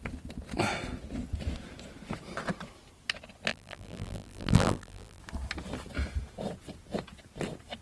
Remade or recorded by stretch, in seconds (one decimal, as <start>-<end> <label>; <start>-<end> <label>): 0.0-3.5 recorded; 3.5-5.2 remade; 5.2-7.8 recorded